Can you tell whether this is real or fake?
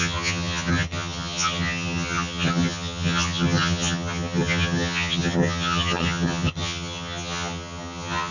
fake